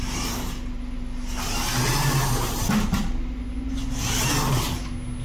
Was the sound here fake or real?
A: real